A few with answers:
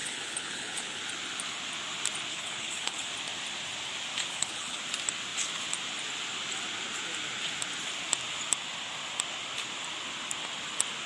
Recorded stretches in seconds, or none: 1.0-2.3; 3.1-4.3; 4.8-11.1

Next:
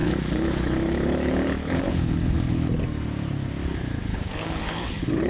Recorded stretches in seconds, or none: 2.7-4.1

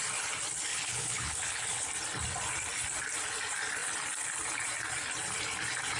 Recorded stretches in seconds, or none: 0.0-0.7; 1.9-6.0

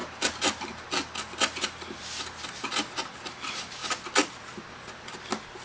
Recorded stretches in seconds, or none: 0.0-5.6

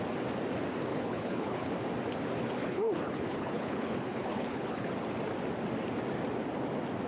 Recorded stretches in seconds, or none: 0.0-0.9; 1.7-2.6; 4.9-7.1